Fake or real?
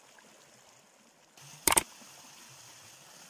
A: real